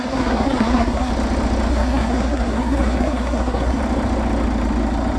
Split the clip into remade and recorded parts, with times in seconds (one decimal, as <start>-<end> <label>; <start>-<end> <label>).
0.0-1.1 remade; 1.1-1.7 recorded; 1.7-3.8 remade; 3.8-5.2 recorded